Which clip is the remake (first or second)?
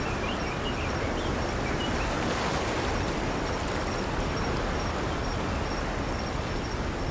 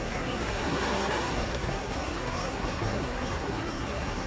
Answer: second